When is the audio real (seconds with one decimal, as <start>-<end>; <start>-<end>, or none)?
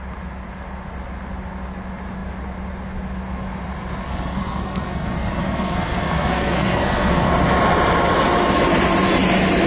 0.0-4.0; 7.3-9.7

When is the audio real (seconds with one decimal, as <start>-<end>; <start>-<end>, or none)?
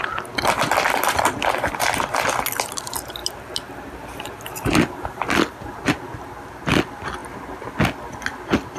0.0-3.2; 5.9-8.8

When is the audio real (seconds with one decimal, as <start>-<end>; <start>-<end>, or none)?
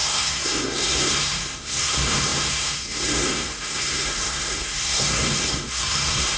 none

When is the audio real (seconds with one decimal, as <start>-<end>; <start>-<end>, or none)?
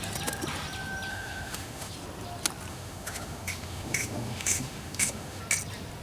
0.0-1.1; 1.9-2.7; 5.4-6.0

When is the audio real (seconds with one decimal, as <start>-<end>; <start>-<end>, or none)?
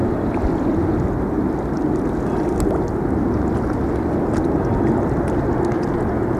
0.0-6.4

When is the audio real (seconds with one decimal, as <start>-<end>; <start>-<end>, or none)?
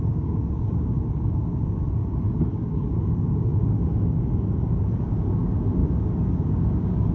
1.8-2.5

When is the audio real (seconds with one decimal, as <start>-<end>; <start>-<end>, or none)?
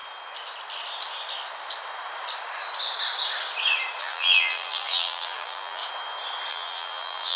0.0-4.0; 5.8-6.5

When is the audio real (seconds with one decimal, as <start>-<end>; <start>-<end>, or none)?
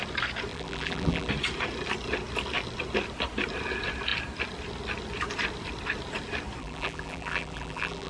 0.0-0.5; 1.3-6.6